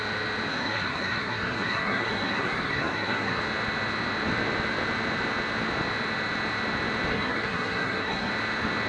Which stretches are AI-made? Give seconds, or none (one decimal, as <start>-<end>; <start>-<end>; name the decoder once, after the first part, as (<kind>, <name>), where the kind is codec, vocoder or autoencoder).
0.5-3.4 (codec, SNAC); 7.1-8.3